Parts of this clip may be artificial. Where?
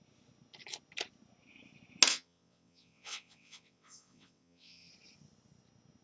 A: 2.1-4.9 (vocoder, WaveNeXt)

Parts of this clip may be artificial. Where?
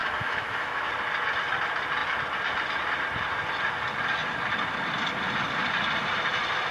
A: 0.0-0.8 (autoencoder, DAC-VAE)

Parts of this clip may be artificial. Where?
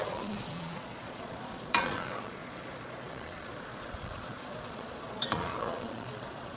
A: 0.0-6.6 (vocoder, Vocos)